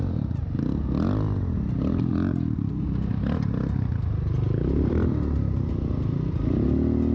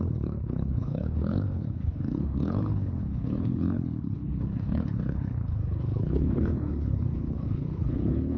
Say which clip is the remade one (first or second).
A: second